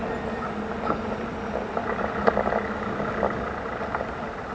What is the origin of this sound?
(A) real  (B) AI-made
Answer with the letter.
A